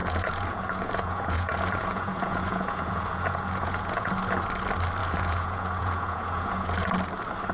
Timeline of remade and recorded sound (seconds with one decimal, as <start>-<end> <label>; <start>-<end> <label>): 0.0-4.1 remade; 4.1-5.0 recorded; 5.0-6.9 remade; 6.9-7.5 recorded